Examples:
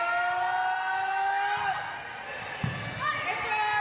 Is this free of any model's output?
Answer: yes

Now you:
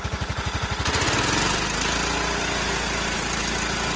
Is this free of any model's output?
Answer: yes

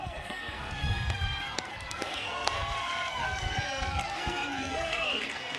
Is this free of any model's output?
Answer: no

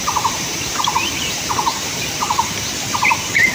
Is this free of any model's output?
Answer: no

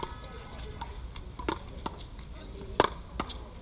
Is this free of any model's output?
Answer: yes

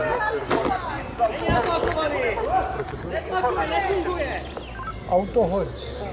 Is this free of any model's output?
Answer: yes